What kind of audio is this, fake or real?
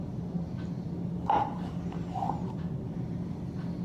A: real